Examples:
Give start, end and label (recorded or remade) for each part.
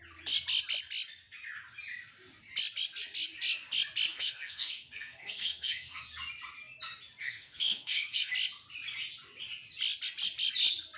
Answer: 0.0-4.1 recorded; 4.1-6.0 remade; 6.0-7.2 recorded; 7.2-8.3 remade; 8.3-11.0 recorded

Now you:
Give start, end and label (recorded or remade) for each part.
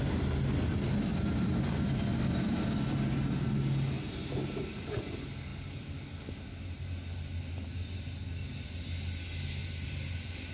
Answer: 0.0-1.1 recorded; 1.1-2.7 remade; 2.7-5.5 recorded; 5.5-6.8 remade; 6.8-9.6 recorded; 9.6-10.5 remade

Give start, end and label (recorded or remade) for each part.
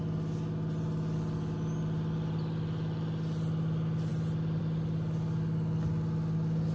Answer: 0.0-6.7 recorded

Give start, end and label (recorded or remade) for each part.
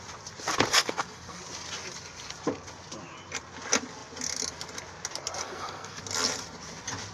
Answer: 0.0-0.7 recorded; 0.7-1.4 remade; 1.4-5.4 recorded; 5.4-6.0 remade; 6.0-7.1 recorded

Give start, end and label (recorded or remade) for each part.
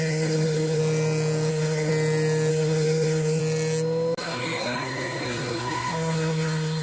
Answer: 0.0-0.8 remade; 0.8-1.5 recorded; 1.5-1.9 remade; 1.9-2.5 recorded; 2.5-3.4 remade; 3.4-4.2 recorded; 4.2-6.8 remade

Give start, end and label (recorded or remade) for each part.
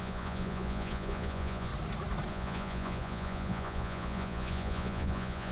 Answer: 0.0-1.7 remade; 1.7-2.3 recorded; 2.3-5.5 remade